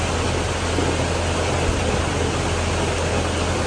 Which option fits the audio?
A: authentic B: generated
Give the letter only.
A